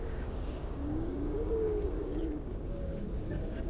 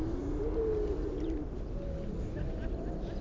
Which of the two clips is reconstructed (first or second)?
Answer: first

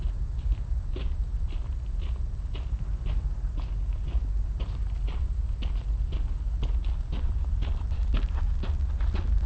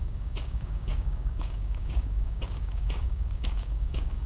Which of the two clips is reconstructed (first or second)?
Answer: second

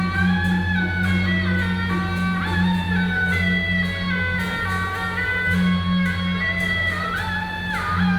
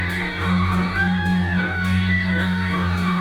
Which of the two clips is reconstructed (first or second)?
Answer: second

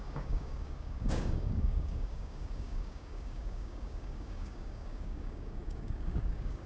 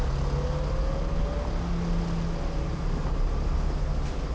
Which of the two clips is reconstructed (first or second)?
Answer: first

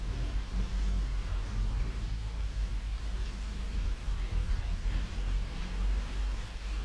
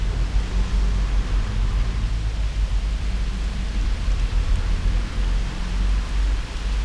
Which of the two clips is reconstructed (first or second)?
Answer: first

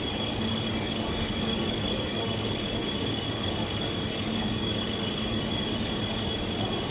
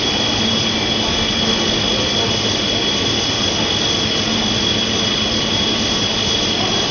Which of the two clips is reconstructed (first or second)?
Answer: first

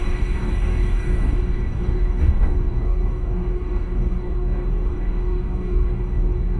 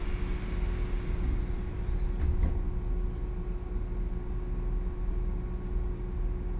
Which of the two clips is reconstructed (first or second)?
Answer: first